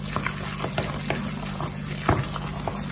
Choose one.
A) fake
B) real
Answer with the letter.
B